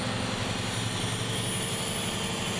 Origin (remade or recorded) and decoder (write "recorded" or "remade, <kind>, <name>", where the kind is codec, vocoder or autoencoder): recorded